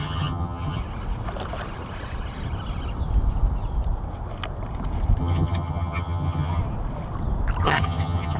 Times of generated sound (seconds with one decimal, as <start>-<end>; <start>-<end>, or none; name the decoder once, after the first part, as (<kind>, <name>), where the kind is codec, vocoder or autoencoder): 0.0-0.8 (vocoder, HiFi-GAN); 5.2-6.6; 7.6-8.4